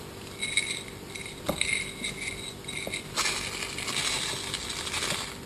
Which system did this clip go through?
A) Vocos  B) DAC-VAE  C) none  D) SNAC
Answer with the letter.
C